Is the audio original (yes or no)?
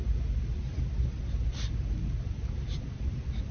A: yes